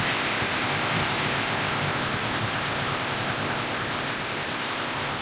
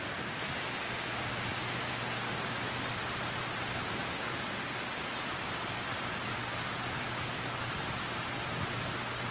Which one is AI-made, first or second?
first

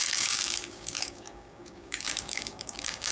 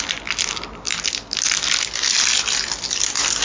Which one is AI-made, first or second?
first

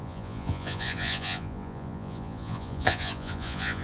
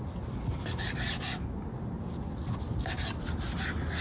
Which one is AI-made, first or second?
first